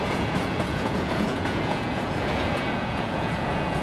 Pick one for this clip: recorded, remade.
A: remade